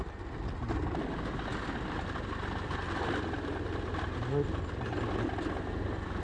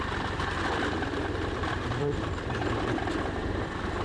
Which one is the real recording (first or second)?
first